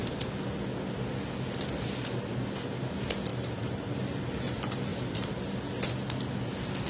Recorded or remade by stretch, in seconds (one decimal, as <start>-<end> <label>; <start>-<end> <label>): 0.0-3.3 recorded; 3.3-4.0 remade; 4.0-4.9 recorded; 4.9-5.7 remade; 5.7-6.9 recorded